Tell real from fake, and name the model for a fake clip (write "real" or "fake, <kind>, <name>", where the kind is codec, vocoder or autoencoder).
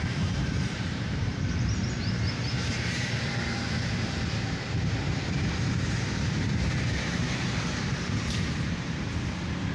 fake, vocoder, BigVGAN v2